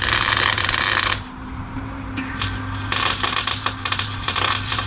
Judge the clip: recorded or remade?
remade